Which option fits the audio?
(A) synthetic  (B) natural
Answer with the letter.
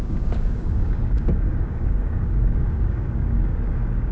A